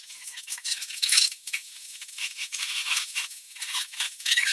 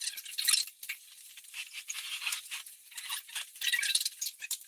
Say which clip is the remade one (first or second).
first